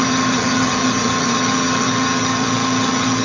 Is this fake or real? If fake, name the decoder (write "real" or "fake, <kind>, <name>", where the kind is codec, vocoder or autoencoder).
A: fake, vocoder, HiFi-GAN